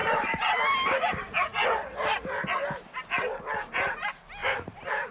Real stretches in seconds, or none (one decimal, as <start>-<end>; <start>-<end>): 1.0-4.4